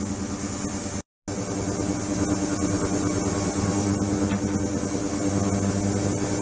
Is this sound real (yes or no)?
yes